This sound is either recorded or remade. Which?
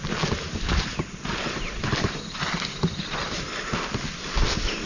recorded